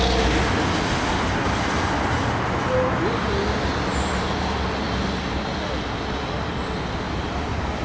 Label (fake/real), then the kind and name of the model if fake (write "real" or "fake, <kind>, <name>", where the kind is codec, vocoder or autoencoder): real